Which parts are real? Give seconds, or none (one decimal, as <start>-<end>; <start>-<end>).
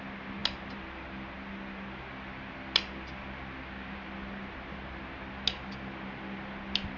0.0-7.0